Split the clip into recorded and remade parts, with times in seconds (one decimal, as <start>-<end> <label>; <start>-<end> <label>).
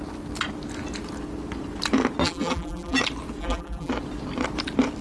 0.0-2.2 recorded; 2.2-3.0 remade; 3.0-3.4 recorded; 3.4-3.9 remade; 3.9-5.0 recorded